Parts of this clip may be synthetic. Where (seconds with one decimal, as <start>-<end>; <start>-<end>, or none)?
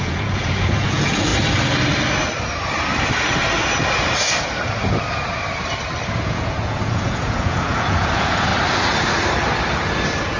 0.0-1.3; 6.1-8.5